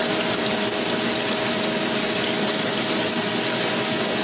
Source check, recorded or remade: recorded